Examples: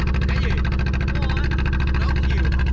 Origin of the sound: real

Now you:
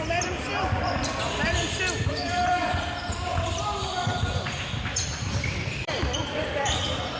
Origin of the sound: fake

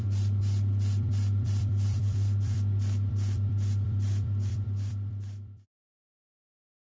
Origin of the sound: fake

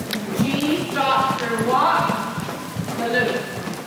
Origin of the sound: real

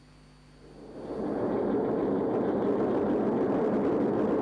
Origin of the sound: real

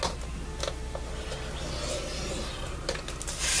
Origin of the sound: real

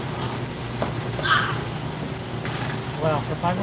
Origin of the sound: real